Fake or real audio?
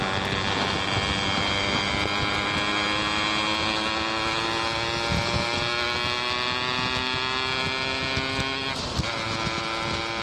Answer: real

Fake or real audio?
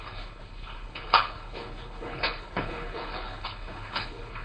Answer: fake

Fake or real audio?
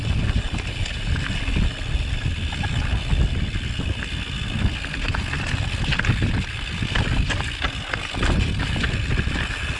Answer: real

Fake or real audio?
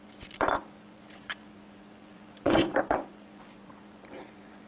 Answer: fake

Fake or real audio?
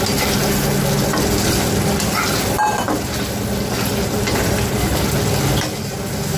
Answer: real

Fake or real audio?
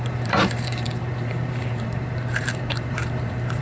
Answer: fake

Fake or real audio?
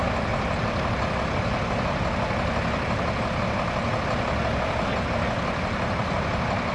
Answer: real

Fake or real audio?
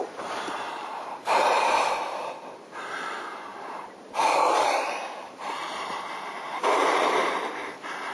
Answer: fake